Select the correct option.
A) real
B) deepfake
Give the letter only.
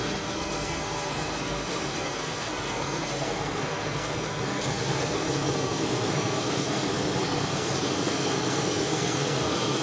B